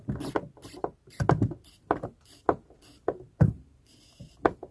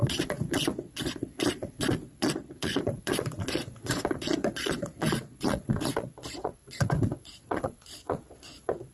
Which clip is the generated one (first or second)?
second